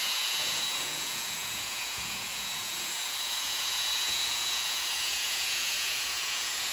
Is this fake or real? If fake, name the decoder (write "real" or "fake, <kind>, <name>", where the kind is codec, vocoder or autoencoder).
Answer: fake, vocoder, Vocos